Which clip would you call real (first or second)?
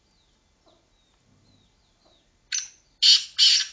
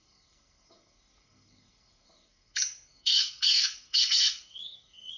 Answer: first